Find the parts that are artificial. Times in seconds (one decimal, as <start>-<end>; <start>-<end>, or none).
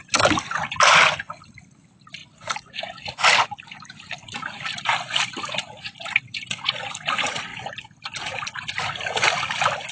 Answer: none